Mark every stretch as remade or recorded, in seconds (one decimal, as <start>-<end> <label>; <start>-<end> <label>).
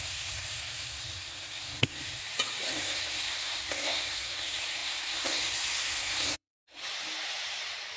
0.0-2.2 remade; 2.2-2.7 recorded; 2.7-6.8 remade; 6.8-8.0 recorded